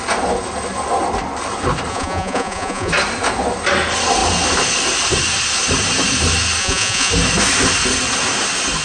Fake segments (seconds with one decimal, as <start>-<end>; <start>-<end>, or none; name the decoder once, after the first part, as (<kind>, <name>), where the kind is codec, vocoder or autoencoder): 1.9-2.9 (vocoder, Vocos); 6.6-7.1